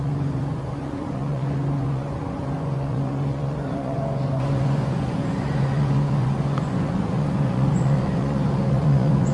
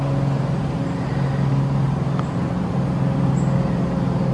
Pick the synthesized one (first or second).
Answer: first